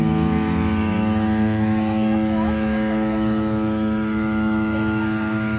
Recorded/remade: remade